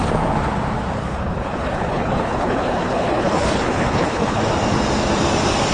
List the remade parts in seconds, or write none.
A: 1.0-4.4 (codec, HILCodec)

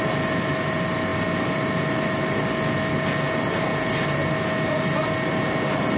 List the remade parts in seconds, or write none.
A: none

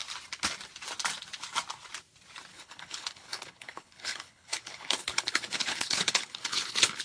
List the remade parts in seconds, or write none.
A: 2.5-7.0 (codec, HILCodec)

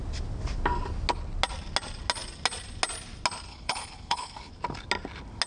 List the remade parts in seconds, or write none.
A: 3.5-4.5 (codec, HILCodec)